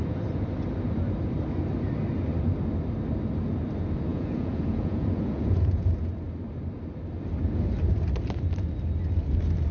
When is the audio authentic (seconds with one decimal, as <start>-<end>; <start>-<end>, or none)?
0.0-4.1; 6.1-9.7